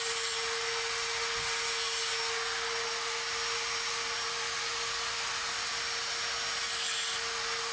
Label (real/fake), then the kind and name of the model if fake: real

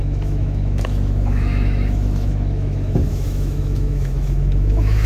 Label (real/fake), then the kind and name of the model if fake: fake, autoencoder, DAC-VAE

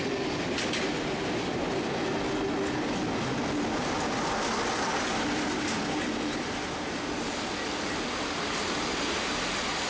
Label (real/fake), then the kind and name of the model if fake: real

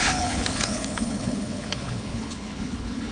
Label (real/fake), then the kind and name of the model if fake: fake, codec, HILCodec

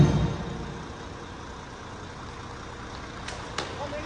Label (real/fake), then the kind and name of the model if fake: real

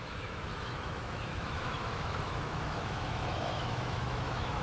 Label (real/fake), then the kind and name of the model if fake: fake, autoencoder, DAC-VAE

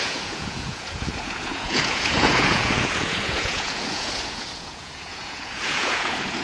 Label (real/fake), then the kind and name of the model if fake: fake, vocoder, Vocos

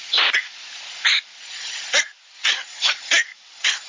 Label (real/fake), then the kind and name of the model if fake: real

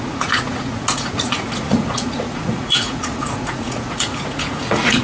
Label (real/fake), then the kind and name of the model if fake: fake, vocoder, Vocos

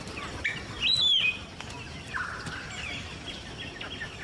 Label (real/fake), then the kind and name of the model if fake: fake, vocoder, BigVGAN v2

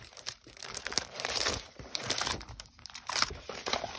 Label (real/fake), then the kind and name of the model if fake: fake, vocoder, BigVGAN v2